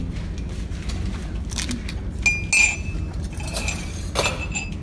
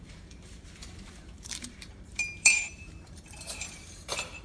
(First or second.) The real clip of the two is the first